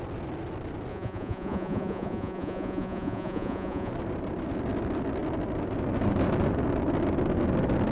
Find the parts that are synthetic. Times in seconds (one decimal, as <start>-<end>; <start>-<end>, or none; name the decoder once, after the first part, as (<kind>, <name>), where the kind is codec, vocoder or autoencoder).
0.9-3.9 (vocoder, Vocos)

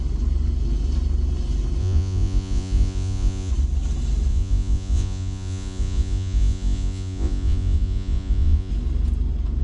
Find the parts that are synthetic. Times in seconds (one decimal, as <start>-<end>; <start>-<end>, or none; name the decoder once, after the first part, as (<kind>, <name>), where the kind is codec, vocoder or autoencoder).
1.8-3.5 (vocoder, Vocos); 4.3-8.7